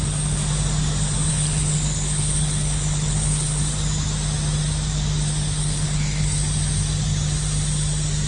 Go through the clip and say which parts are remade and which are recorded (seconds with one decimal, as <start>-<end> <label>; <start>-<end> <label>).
0.0-1.3 recorded; 1.3-3.6 remade; 3.6-5.6 recorded; 5.6-6.4 remade; 6.4-8.3 recorded